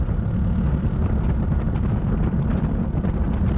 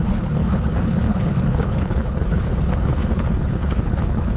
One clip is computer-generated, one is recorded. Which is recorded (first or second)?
first